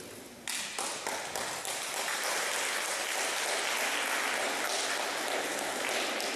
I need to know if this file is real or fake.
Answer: real